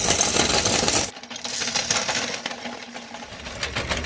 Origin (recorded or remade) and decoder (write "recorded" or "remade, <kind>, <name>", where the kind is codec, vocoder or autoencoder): recorded